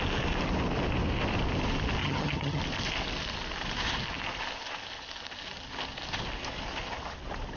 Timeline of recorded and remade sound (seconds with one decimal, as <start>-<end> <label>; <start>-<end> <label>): 0.0-2.0 recorded; 2.0-2.6 remade; 2.6-7.6 recorded